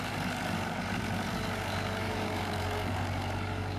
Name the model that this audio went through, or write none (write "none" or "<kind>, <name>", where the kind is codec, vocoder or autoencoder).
codec, DAC